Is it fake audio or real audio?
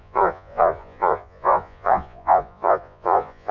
fake